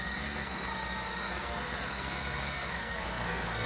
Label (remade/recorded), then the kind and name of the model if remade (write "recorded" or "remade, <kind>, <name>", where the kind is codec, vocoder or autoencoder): remade, codec, SNAC